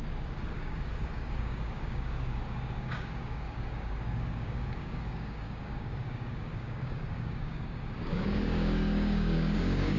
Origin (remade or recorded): remade